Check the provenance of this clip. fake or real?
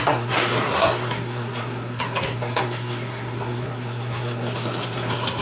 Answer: fake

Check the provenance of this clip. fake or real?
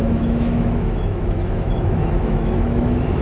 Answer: fake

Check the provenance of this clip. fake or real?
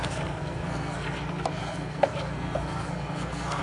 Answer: fake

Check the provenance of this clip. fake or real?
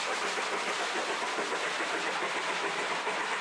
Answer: real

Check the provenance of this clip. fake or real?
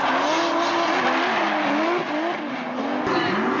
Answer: real